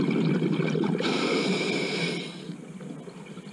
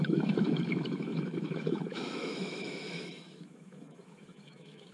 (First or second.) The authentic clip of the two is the first